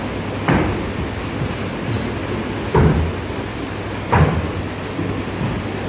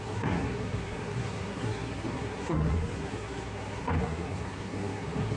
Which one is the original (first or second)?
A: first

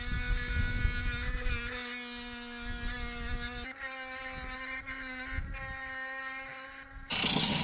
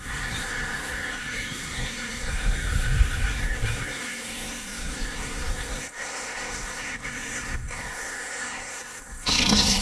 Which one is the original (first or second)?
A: first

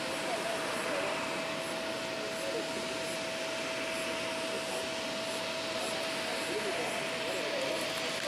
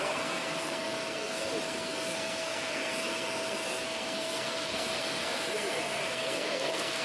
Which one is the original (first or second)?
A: first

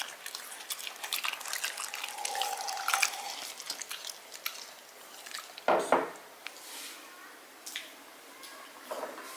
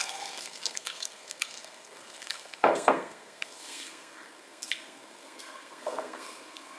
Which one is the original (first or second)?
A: first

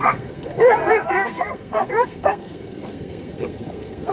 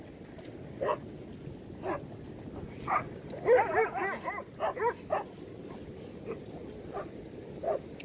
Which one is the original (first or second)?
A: second